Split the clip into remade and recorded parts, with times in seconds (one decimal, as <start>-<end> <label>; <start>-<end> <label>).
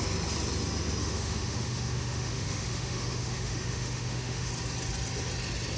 0.0-1.0 recorded; 1.0-4.5 remade; 4.5-5.8 recorded